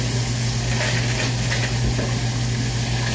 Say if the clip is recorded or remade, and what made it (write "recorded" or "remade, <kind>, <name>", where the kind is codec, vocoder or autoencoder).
recorded